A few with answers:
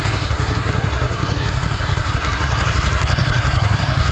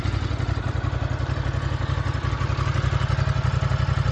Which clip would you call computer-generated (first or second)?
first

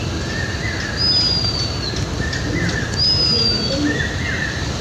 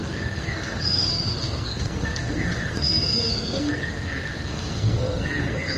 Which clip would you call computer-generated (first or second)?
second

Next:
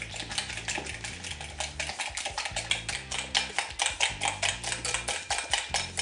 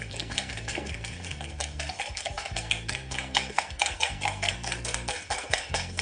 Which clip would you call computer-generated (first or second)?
second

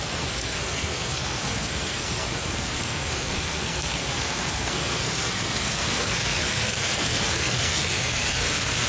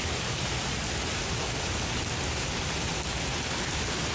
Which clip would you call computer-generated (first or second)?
first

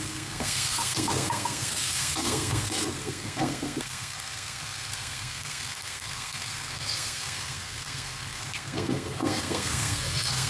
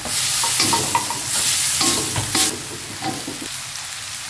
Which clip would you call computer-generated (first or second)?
first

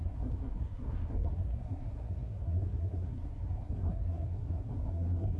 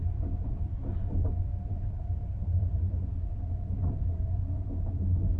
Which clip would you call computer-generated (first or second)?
first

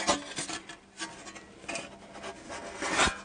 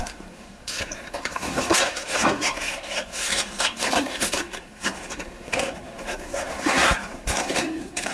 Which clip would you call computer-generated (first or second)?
second